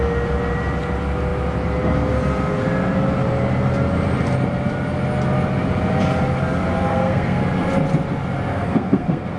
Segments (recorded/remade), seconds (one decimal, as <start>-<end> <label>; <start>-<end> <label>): 0.0-6.9 recorded; 6.9-7.4 remade; 7.4-8.5 recorded; 8.5-9.4 remade